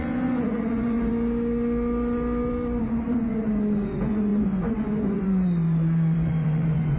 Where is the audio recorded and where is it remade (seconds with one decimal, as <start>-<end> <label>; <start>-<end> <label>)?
0.0-1.1 remade; 1.1-2.8 recorded; 2.8-7.0 remade